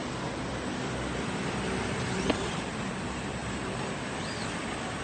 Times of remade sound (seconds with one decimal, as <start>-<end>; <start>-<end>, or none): 0.0-2.7; 3.4-5.0